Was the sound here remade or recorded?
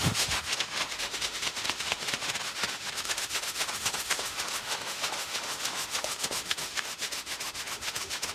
remade